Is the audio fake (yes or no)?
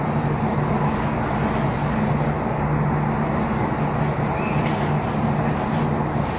no